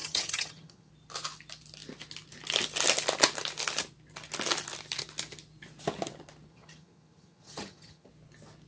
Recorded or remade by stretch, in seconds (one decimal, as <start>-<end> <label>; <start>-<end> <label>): 0.0-0.9 remade; 0.9-6.5 recorded; 6.5-8.1 remade; 8.1-8.7 recorded